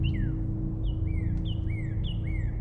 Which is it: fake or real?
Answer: real